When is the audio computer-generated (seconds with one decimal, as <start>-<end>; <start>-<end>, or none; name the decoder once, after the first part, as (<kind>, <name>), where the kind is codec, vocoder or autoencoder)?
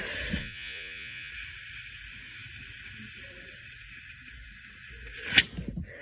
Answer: 0.4-1.3 (vocoder, Vocos)